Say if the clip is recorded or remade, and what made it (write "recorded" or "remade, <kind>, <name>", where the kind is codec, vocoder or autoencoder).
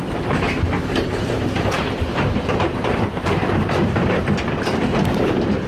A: remade, vocoder, BigVGAN v2